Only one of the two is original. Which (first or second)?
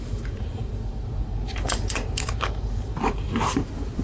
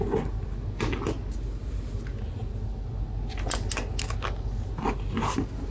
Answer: second